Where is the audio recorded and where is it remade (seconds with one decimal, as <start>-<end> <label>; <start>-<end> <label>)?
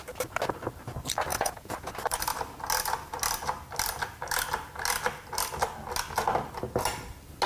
0.0-1.3 recorded; 1.3-1.9 remade; 1.9-7.5 recorded